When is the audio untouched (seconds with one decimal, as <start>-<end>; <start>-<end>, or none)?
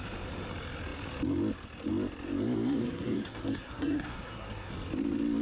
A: 0.0-2.8; 4.7-5.4